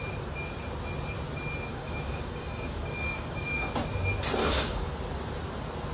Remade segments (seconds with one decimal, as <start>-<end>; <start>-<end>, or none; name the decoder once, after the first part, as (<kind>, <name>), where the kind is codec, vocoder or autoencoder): 1.7-3.7 (codec, DAC); 4.4-4.9